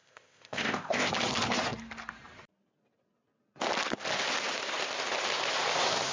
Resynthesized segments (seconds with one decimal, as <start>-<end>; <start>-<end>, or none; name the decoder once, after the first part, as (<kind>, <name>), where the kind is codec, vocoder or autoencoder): 0.0-1.1 (codec, ZipCodec)